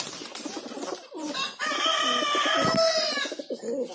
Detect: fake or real real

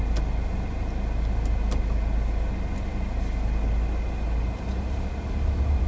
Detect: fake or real real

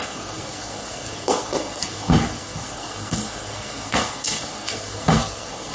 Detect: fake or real fake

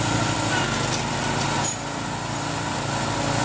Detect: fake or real real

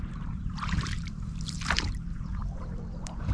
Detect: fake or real fake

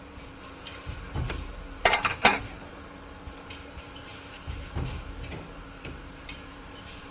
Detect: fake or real fake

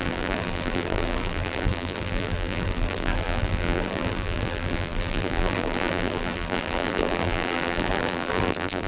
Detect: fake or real fake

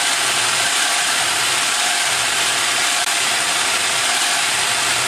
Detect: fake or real fake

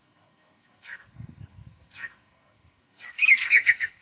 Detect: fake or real fake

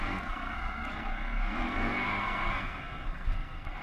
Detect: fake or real fake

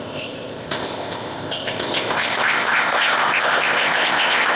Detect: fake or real fake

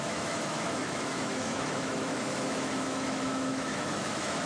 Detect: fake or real fake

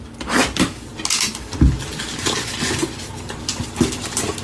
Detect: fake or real real